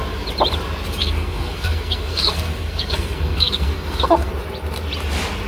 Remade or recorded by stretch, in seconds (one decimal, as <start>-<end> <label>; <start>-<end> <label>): 0.0-1.0 recorded; 1.0-4.3 remade; 4.3-5.5 recorded